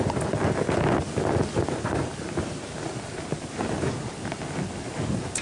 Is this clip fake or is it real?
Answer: real